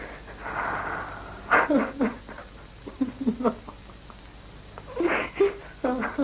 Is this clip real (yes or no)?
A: yes